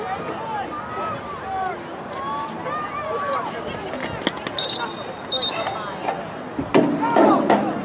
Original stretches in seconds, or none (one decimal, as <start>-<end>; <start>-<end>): 0.0-7.8